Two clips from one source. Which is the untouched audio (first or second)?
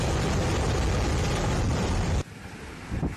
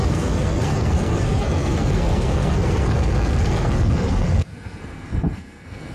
first